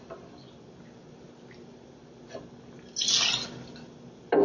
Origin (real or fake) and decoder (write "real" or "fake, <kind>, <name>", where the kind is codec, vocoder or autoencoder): real